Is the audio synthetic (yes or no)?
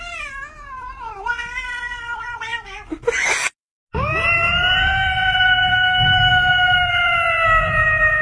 no